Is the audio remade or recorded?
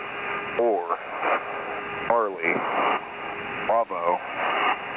recorded